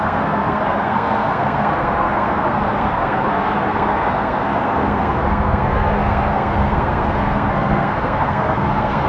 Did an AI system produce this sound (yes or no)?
yes